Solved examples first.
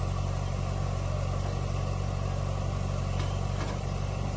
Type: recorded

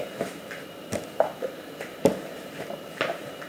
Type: remade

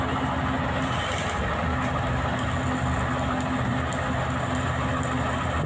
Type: recorded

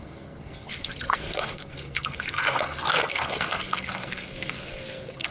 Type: remade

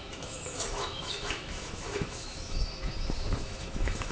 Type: remade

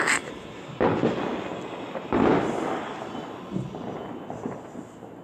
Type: recorded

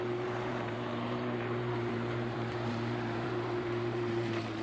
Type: remade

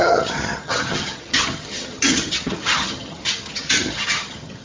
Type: remade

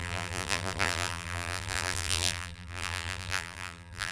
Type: remade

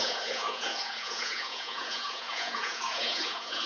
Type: remade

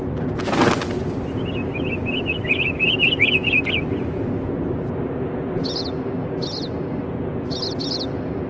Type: recorded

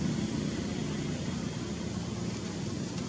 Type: recorded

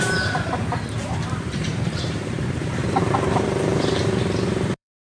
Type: remade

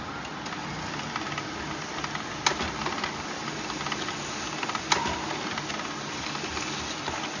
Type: recorded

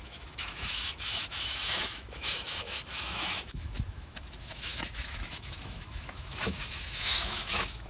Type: remade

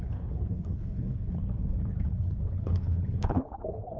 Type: remade